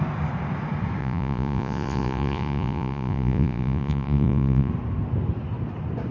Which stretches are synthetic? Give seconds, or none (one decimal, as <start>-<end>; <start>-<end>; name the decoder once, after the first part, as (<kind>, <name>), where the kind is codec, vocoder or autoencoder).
1.0-4.7 (vocoder, Vocos)